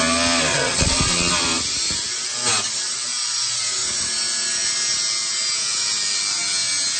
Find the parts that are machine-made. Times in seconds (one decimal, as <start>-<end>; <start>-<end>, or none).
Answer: 0.5-1.3